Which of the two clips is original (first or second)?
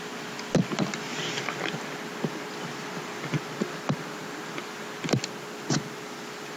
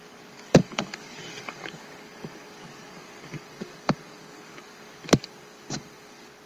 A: first